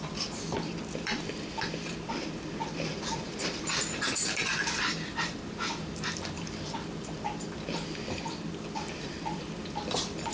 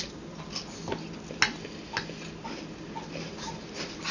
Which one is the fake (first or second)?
first